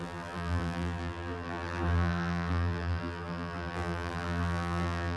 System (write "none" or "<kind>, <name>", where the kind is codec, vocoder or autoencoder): vocoder, BigVGAN v2